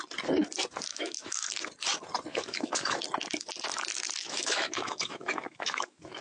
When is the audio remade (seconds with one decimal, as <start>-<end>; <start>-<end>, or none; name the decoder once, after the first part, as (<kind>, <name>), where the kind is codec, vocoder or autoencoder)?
0.9-1.5 (autoencoder, DAC-VAE); 2.3-3.0; 4.2-6.2